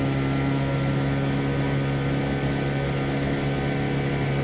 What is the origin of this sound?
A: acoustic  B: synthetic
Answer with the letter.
A